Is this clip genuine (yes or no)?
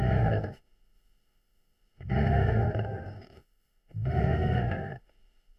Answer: no